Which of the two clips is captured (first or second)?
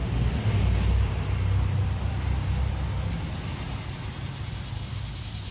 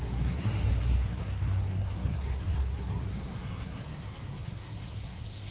first